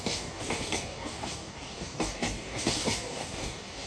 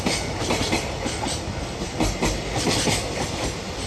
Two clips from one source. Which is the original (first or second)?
second